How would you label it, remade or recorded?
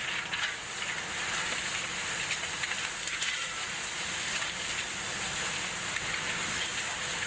recorded